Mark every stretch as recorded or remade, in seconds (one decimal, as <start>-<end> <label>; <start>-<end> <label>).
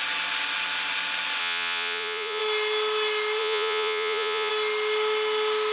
0.0-1.4 recorded; 1.4-2.4 remade; 2.4-3.4 recorded; 3.4-4.5 remade; 4.5-5.7 recorded